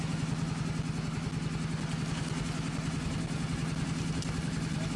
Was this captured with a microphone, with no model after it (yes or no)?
yes